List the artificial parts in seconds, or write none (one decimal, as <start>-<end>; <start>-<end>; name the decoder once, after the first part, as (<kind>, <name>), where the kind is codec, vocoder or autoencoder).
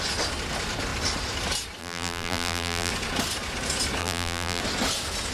1.8-2.9 (vocoder, BigVGAN v2); 4.0-4.6